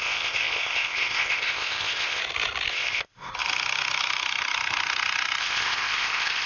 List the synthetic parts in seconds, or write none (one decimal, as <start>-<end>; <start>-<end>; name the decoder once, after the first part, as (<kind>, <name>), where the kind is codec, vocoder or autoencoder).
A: 0.0-2.2 (codec, ZipCodec); 2.7-3.3; 5.4-6.5

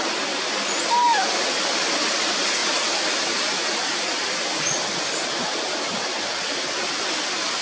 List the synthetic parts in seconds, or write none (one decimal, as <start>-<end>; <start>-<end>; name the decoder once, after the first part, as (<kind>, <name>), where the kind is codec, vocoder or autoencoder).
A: none

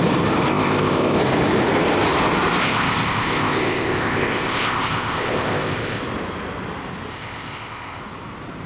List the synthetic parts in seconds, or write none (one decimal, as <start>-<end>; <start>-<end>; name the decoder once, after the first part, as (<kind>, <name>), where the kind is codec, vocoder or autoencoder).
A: 0.5-1.2 (codec, ZipCodec); 2.6-6.0; 7.1-8.0